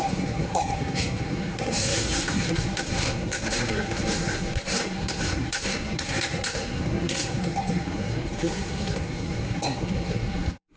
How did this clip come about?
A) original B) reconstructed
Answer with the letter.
B